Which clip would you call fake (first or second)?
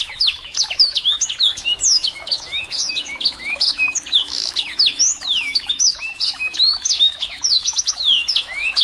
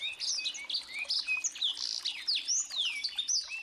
first